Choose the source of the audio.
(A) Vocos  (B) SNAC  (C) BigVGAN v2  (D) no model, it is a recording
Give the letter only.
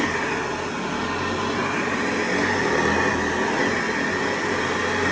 D